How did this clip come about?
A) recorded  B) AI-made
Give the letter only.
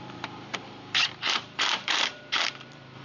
B